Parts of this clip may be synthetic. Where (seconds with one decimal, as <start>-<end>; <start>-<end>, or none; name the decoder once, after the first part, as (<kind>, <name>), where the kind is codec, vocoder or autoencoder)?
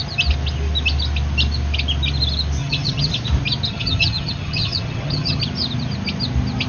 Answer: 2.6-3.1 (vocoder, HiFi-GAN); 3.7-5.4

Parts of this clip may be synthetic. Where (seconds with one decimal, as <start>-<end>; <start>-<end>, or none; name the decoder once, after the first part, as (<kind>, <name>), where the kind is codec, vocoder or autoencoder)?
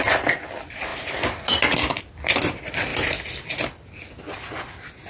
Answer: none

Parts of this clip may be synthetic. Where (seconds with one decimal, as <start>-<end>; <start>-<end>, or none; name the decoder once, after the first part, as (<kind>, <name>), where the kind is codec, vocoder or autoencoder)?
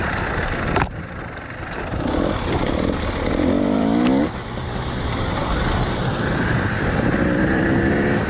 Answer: 0.0-8.3 (vocoder, BigVGAN v2)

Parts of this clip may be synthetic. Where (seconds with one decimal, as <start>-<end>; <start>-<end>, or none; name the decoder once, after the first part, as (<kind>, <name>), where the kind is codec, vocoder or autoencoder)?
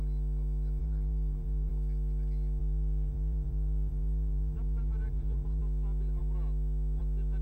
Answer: 0.8-1.7 (vocoder, BigVGAN v2); 2.6-5.6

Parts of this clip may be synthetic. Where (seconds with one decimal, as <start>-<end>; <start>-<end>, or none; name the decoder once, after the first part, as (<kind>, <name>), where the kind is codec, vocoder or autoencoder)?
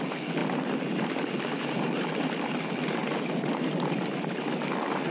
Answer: none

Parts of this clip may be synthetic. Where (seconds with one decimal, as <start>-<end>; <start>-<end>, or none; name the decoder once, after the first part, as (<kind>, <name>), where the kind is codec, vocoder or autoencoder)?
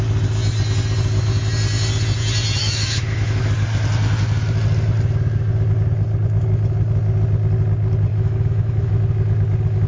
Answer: 2.6-3.4 (autoencoder, DAC-VAE); 8.1-8.9